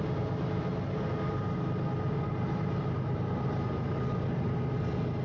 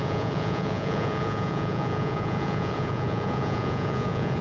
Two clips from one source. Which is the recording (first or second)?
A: first